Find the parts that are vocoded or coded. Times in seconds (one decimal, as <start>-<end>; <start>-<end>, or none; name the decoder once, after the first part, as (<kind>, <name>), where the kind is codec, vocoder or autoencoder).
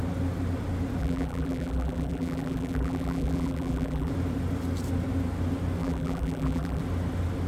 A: 1.0-4.1 (vocoder, BigVGAN v2); 5.8-6.8